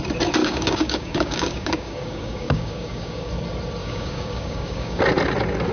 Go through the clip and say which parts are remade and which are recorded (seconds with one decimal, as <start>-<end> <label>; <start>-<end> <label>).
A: 0.0-0.4 recorded; 0.4-3.3 remade; 3.3-3.8 recorded; 3.8-5.0 remade; 5.0-5.7 recorded